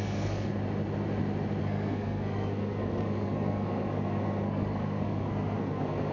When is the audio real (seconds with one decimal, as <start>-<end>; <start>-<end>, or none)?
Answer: 0.5-1.6